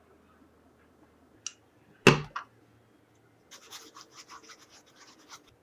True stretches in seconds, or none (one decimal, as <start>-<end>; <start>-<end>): 0.0-5.6